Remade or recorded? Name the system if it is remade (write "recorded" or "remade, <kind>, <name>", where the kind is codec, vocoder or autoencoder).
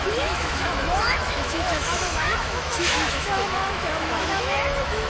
remade, autoencoder, DAC-VAE